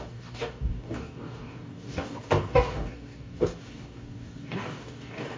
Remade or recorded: remade